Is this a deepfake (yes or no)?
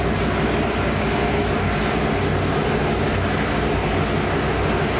no